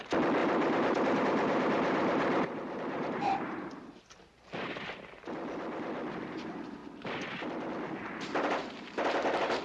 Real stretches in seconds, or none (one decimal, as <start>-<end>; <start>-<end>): 0.0-0.4; 3.7-9.6